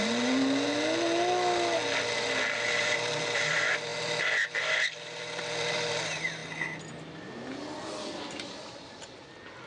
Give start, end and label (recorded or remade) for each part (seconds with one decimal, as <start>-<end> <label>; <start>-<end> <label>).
0.0-0.4 remade; 0.4-2.6 recorded; 2.6-3.9 remade; 3.9-4.5 recorded; 4.5-6.4 remade; 6.4-8.7 recorded; 8.7-9.7 remade